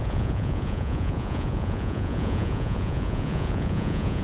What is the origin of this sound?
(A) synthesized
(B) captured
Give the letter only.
A